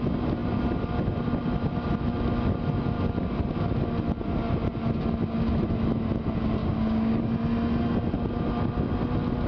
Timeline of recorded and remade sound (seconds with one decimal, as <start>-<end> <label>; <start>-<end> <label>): 0.0-6.6 recorded; 6.6-7.2 remade; 7.2-9.5 recorded